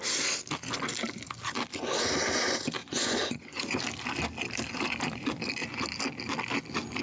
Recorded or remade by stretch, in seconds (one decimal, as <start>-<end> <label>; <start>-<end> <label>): 0.0-2.8 recorded; 2.8-3.8 remade; 3.8-7.0 recorded